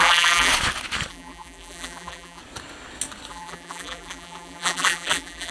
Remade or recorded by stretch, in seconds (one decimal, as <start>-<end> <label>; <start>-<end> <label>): 0.0-0.5 remade; 0.5-1.1 recorded; 1.1-2.4 remade; 2.4-3.3 recorded; 3.3-5.5 remade